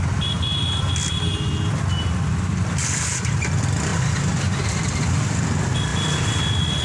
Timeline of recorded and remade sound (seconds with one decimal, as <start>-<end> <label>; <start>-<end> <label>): 0.0-1.3 remade; 1.3-2.3 recorded; 2.3-6.8 remade

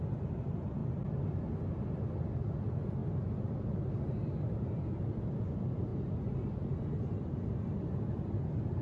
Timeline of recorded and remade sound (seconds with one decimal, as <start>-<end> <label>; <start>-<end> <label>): 0.0-8.8 recorded

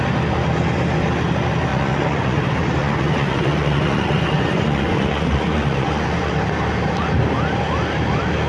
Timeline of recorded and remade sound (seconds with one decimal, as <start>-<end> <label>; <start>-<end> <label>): 0.0-1.7 recorded; 1.7-2.4 remade; 2.4-2.8 recorded; 2.8-6.3 remade; 6.3-8.5 recorded

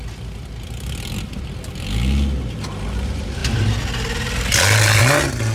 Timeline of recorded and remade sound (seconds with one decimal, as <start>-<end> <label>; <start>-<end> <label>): 0.0-5.5 recorded

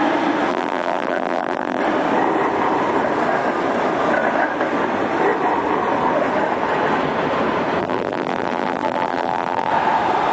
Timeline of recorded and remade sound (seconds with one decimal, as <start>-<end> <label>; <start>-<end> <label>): 0.0-0.5 recorded; 0.5-1.8 remade; 1.8-7.8 recorded; 7.8-9.7 remade; 9.7-10.3 recorded

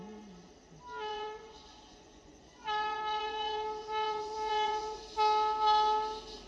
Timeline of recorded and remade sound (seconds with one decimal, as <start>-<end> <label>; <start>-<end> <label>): 0.0-1.1 recorded; 1.1-5.0 remade; 5.0-6.5 recorded

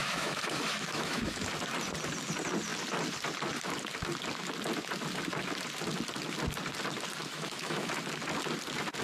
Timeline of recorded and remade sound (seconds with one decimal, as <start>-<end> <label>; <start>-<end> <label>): 0.0-1.4 remade; 1.4-7.2 recorded; 7.2-7.9 remade; 7.9-9.0 recorded

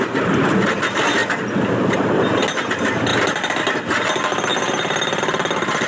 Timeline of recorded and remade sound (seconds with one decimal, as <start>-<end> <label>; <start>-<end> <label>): 0.0-3.1 recorded; 3.1-3.6 remade; 3.6-4.5 recorded; 4.5-5.2 remade; 5.2-5.9 recorded